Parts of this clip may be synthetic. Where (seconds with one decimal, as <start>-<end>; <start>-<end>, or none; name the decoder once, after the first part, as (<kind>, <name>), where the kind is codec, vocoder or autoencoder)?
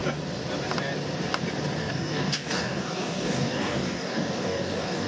1.8-5.1 (codec, DAC)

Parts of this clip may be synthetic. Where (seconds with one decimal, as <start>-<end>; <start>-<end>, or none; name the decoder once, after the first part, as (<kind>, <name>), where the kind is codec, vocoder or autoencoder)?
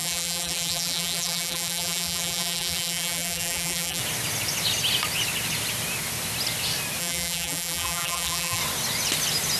0.0-4.0 (vocoder, BigVGAN v2); 7.0-8.6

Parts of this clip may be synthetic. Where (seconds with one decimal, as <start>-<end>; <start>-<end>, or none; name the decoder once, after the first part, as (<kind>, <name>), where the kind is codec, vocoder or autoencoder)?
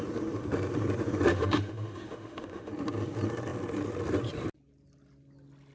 1.3-2.7 (autoencoder, DAC-VAE)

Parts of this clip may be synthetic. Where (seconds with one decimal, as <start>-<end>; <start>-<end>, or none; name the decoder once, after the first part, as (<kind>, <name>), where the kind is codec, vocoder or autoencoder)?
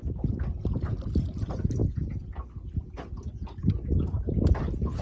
none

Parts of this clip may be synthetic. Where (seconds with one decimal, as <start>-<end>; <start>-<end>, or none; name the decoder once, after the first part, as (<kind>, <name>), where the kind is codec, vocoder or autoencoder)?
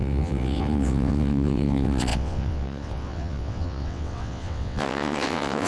0.0-5.7 (vocoder, WaveNeXt)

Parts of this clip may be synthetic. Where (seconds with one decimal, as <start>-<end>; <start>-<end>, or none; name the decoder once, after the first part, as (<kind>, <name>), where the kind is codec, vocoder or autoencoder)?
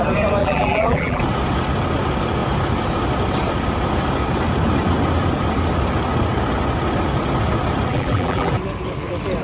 0.4-1.2 (vocoder, BigVGAN v2); 7.9-8.5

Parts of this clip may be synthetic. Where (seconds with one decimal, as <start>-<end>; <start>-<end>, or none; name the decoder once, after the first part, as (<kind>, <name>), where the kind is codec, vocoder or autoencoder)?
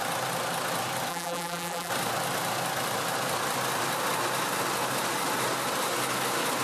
1.1-1.9 (vocoder, BigVGAN v2)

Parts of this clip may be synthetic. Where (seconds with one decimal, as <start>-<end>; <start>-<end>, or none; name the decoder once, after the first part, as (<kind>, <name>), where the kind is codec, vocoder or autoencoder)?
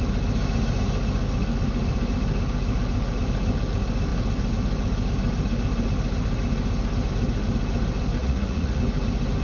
8.2-8.8 (vocoder, Vocos)